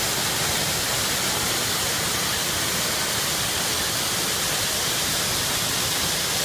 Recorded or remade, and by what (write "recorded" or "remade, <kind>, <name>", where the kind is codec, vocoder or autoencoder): recorded